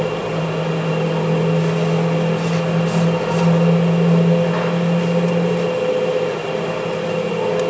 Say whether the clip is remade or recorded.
recorded